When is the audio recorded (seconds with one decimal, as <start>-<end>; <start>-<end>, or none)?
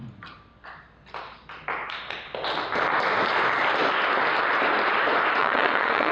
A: 0.0-5.4